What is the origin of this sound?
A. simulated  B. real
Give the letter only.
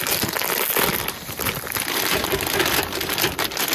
B